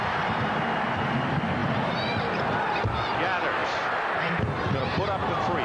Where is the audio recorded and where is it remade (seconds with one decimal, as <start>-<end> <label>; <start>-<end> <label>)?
0.0-5.6 recorded